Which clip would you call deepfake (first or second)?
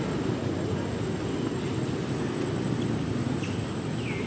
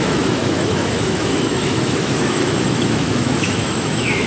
second